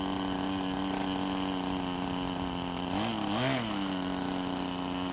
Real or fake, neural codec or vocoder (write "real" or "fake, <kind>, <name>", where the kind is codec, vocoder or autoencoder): real